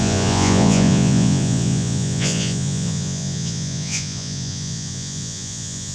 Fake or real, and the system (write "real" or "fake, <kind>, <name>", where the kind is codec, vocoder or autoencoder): fake, vocoder, Vocos